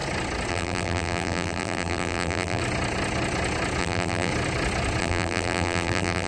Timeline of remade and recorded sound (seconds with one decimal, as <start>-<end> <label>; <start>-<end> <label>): 0.0-0.5 recorded; 0.5-2.6 remade; 2.6-3.8 recorded; 3.8-4.3 remade; 4.3-5.0 recorded; 5.0-6.3 remade